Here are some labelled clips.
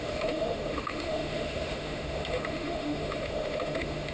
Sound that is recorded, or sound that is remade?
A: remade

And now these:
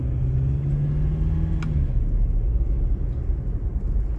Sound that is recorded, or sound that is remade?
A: recorded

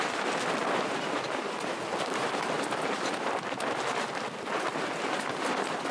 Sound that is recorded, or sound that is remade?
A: recorded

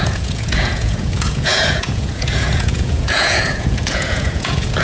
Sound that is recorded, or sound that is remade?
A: remade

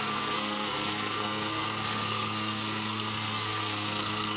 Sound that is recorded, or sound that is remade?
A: remade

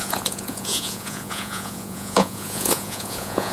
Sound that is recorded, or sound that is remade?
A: remade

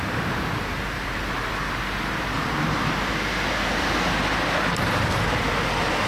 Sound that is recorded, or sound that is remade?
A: recorded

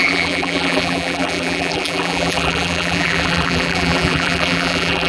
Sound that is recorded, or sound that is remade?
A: remade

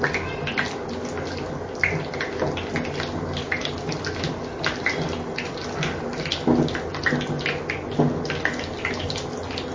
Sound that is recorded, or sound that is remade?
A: recorded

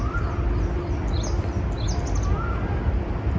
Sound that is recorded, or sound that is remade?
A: recorded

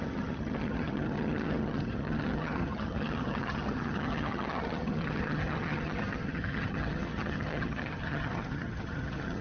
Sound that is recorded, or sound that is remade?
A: remade